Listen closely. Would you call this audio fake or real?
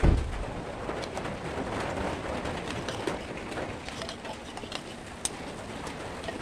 real